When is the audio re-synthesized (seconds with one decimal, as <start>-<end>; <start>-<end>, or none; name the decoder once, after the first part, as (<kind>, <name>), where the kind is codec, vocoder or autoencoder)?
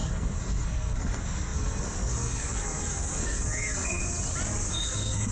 0.0-4.0 (codec, SNAC); 4.7-5.3